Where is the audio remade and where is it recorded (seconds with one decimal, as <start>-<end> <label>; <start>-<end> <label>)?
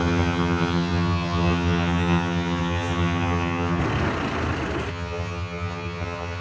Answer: 0.0-3.8 remade; 3.8-4.9 recorded; 4.9-6.4 remade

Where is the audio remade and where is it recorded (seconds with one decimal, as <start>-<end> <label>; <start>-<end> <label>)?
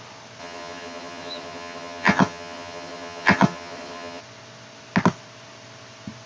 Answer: 0.0-0.4 recorded; 0.4-4.2 remade; 4.2-6.3 recorded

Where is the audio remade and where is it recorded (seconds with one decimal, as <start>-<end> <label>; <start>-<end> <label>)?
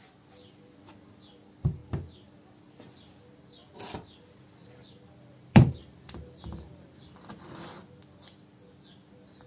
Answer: 0.0-1.8 recorded; 1.8-2.4 remade; 2.4-4.6 recorded; 4.6-7.2 remade; 7.2-9.5 recorded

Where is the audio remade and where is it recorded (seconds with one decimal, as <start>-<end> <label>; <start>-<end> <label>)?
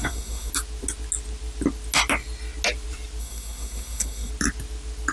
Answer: 0.0-0.5 remade; 0.5-3.2 recorded; 3.2-4.3 remade; 4.3-5.1 recorded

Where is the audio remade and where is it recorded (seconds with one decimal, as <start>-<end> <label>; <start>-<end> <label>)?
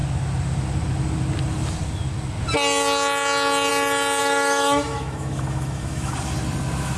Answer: 0.0-4.2 recorded; 4.2-6.1 remade; 6.1-7.0 recorded